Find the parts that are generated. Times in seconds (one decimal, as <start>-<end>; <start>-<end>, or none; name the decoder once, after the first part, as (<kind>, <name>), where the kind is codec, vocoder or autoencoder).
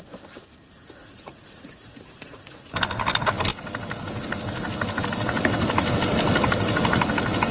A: 1.0-2.8 (vocoder, Vocos)